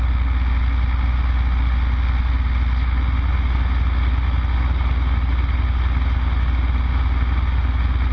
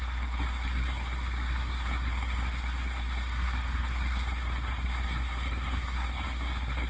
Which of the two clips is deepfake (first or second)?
second